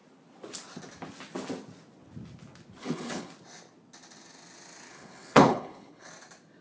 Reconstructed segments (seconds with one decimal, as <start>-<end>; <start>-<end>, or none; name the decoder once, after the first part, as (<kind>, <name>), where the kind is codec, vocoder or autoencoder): 2.8-3.3 (codec, HILCodec); 4.9-6.1